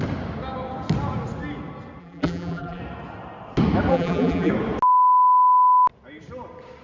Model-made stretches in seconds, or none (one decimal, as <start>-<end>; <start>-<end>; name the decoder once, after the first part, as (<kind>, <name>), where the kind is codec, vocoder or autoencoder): 2.0-2.8 (vocoder, BigVGAN v2); 3.9-4.5